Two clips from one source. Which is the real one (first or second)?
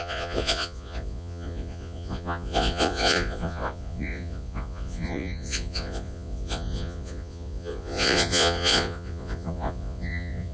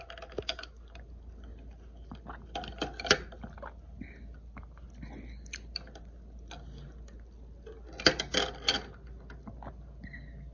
second